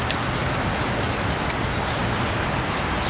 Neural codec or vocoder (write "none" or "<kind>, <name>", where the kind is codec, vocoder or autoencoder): none